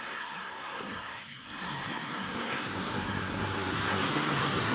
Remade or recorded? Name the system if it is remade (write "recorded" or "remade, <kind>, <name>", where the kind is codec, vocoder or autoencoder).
remade, codec, SNAC